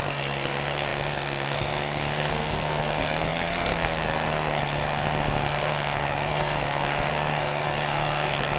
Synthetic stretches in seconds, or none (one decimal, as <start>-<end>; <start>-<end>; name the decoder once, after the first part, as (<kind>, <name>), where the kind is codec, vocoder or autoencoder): 0.0-8.6 (codec, SNAC)